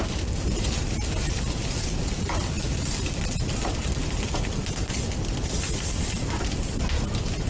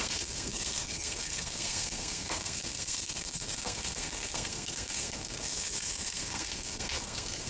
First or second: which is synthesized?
second